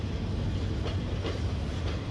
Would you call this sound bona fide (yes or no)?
yes